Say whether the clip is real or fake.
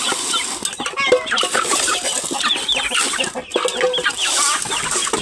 real